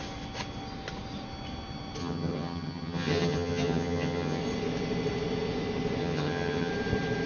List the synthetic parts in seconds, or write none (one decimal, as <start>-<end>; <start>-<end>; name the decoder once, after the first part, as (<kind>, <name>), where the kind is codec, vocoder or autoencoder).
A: 2.0-4.4 (vocoder, HiFi-GAN); 6.0-6.7